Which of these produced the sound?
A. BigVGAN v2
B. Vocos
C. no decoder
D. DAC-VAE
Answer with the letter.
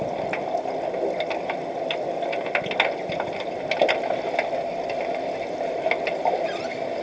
C